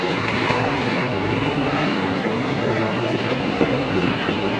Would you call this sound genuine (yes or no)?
no